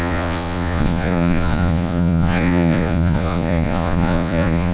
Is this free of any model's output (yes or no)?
no